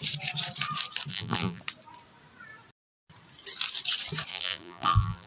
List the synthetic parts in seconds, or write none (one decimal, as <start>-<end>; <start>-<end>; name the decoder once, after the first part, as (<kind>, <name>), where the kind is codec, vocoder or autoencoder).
1.1-1.6 (vocoder, BigVGAN v2); 4.3-5.3